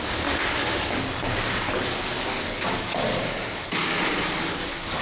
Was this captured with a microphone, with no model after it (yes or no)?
no